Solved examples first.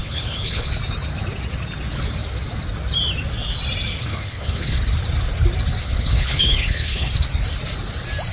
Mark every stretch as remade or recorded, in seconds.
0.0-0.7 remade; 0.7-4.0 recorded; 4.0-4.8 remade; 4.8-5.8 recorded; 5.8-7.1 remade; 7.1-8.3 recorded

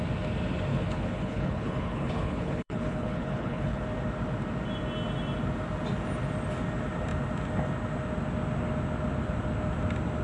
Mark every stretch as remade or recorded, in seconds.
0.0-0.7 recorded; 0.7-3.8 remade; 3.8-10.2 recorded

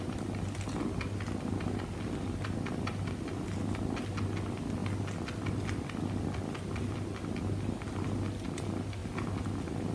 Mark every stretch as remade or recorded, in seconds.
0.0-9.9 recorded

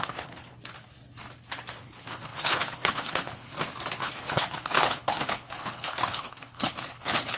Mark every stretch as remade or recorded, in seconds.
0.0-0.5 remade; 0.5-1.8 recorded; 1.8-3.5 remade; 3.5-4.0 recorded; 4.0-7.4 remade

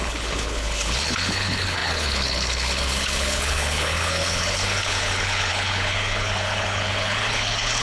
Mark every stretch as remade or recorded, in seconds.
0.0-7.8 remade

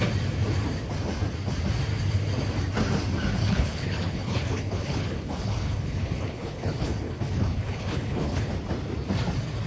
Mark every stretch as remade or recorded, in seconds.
0.0-3.4 recorded; 3.4-8.5 remade; 8.5-9.7 recorded

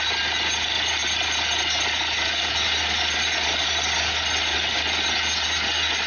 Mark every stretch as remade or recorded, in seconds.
0.0-6.1 recorded

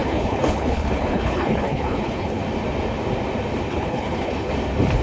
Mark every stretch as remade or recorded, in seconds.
0.0-2.4 remade; 2.4-3.7 recorded; 3.7-4.5 remade; 4.5-5.0 recorded